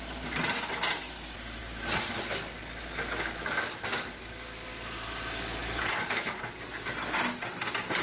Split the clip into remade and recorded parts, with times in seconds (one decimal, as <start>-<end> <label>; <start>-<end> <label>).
0.0-5.6 recorded; 5.6-6.3 remade; 6.3-8.0 recorded